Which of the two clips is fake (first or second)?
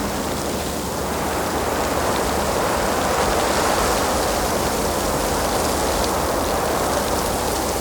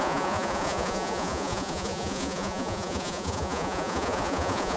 second